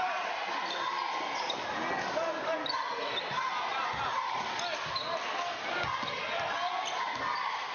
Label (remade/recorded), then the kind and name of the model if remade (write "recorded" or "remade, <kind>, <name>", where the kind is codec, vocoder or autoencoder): recorded